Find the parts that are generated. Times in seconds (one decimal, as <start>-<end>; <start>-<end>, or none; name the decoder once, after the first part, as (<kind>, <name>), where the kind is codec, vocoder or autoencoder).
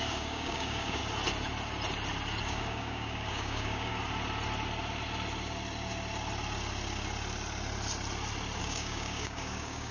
0.0-1.0 (codec, DAC); 2.4-3.9; 8.6-9.9